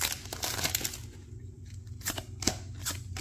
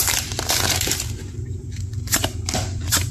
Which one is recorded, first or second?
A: first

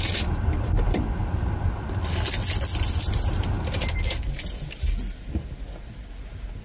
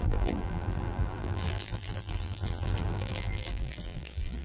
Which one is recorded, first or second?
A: first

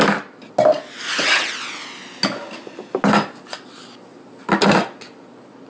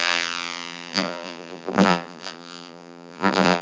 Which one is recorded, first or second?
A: first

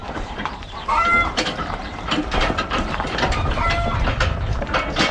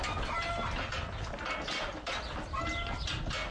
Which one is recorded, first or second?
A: second